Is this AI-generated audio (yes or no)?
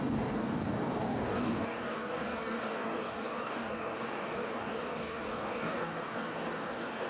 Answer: yes